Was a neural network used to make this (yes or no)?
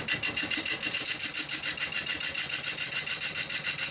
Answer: no